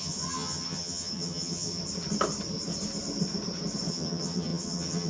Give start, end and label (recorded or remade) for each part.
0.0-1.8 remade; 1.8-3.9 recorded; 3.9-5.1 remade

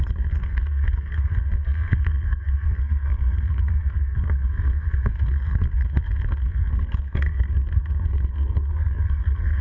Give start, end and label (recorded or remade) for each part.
0.0-9.6 remade

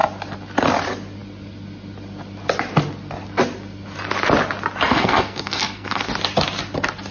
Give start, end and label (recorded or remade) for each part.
0.0-4.9 recorded; 4.9-6.1 remade; 6.1-7.1 recorded